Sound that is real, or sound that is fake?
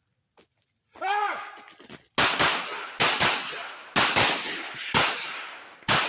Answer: real